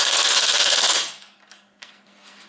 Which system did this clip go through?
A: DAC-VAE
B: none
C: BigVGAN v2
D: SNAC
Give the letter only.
D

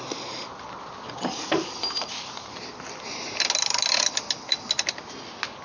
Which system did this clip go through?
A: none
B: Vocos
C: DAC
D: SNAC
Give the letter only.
A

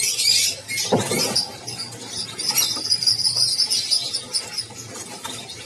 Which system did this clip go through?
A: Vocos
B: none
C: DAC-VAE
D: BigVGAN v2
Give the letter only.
B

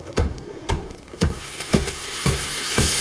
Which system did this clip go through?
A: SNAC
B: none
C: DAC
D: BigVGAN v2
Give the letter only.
A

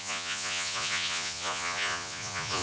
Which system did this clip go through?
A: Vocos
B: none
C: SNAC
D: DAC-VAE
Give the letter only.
A